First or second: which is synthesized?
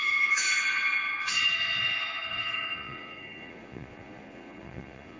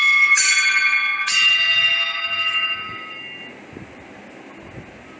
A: first